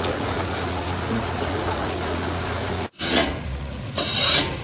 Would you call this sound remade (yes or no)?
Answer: yes